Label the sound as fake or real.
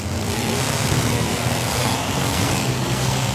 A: fake